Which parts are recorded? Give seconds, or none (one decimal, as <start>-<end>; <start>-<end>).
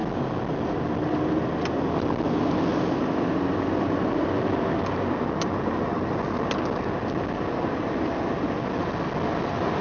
0.0-2.7; 4.2-9.8